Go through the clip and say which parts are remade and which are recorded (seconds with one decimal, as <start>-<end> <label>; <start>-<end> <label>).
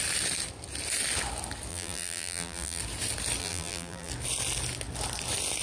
0.0-1.7 recorded; 1.7-2.8 remade; 2.8-3.4 recorded; 3.4-4.1 remade; 4.1-5.6 recorded